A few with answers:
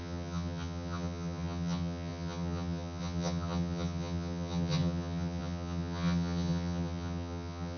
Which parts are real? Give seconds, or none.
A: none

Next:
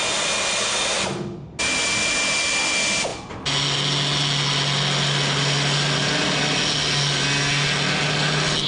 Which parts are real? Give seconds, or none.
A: 0.0-8.7

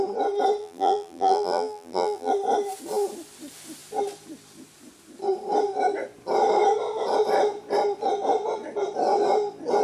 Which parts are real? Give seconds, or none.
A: 0.0-0.6; 2.3-9.8

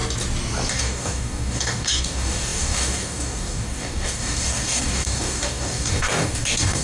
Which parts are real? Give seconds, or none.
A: 0.0-0.7

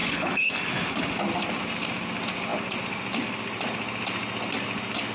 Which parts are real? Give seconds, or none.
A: 0.5-5.1

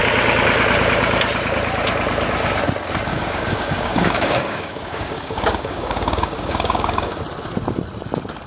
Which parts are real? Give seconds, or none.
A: 0.0-3.1; 7.2-8.5

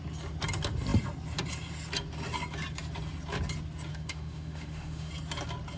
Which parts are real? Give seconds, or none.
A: 0.0-3.9; 5.1-5.8

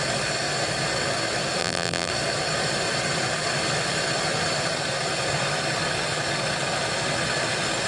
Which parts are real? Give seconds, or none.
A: 0.0-1.6; 2.1-7.9